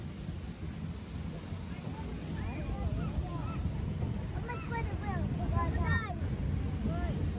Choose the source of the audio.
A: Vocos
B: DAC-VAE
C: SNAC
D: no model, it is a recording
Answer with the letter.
D